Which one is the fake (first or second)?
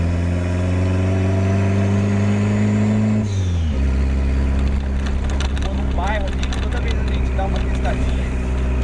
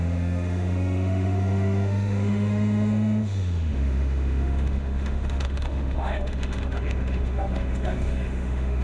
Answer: second